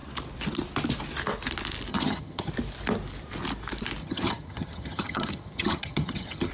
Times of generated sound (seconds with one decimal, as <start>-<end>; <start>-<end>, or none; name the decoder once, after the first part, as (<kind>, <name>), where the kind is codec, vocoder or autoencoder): 1.9-2.5 (vocoder, HiFi-GAN); 4.0-6.5